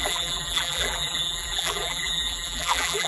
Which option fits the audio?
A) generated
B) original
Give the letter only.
A